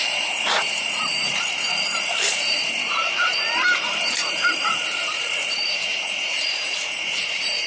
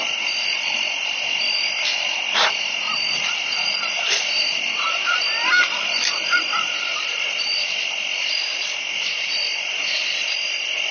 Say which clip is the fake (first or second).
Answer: first